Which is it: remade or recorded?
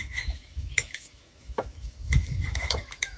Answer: remade